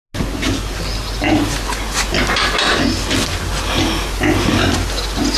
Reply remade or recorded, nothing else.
recorded